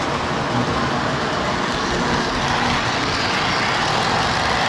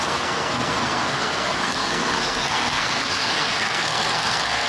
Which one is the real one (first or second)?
first